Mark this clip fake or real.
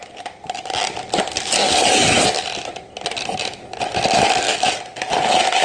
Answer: real